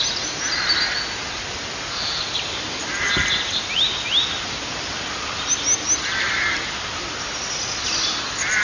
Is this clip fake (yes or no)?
no